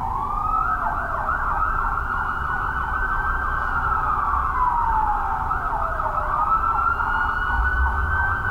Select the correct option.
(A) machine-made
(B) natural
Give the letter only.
B